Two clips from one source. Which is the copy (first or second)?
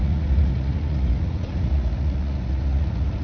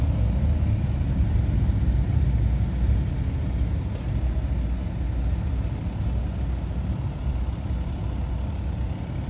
first